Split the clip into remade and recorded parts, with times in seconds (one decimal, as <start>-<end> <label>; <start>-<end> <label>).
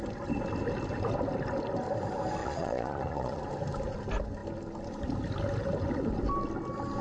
0.0-2.4 recorded; 2.4-3.4 remade; 3.4-7.0 recorded